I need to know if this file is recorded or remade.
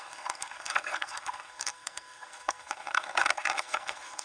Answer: remade